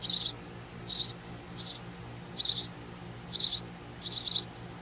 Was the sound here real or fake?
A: real